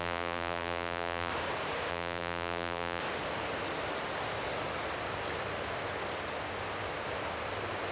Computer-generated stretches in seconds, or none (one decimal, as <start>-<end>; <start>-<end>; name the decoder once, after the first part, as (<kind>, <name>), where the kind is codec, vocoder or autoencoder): 0.0-1.3 (vocoder, BigVGAN v2); 1.9-3.0